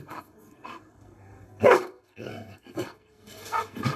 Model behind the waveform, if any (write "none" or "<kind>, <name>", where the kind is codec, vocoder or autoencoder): codec, SNAC